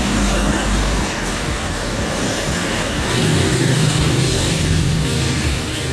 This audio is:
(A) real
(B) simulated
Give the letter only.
B